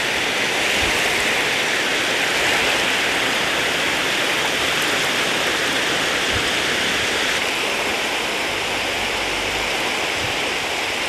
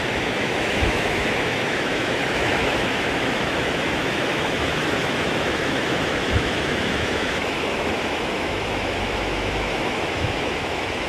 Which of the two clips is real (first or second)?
first